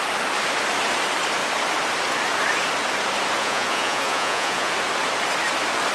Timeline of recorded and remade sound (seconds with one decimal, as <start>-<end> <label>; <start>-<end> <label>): 0.0-3.4 recorded; 3.4-4.7 remade; 4.7-5.9 recorded